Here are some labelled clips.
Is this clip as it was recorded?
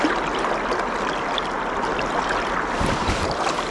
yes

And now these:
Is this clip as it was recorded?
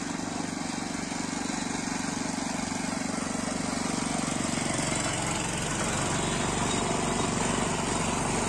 yes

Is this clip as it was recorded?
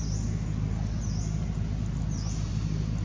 yes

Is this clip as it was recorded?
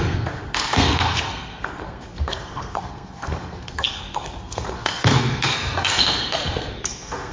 no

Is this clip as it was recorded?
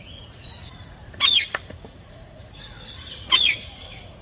no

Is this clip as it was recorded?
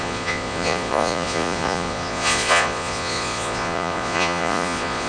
no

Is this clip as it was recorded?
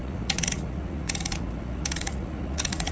no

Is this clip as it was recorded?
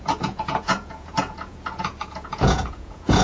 no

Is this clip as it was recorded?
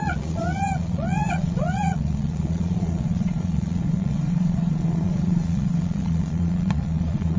no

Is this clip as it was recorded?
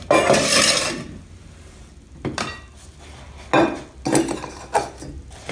yes